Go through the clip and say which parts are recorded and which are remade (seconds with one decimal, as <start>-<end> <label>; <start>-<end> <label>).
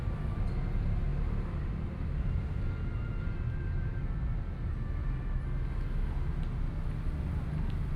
0.0-8.0 recorded